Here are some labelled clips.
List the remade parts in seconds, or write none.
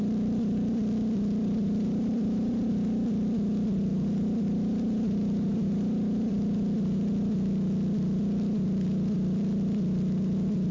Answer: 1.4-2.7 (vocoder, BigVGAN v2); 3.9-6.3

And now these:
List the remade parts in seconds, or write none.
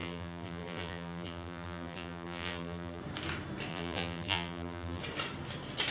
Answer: 0.0-3.0 (vocoder, BigVGAN v2); 3.7-5.0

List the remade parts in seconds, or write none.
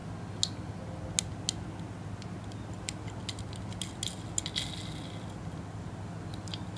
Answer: none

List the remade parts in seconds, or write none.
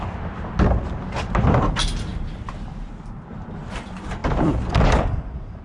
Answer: 2.1-3.5 (vocoder, BigVGAN v2); 4.2-5.6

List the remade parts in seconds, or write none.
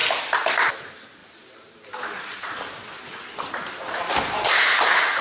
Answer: 1.2-4.1 (vocoder, BigVGAN v2)